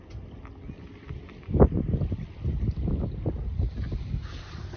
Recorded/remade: recorded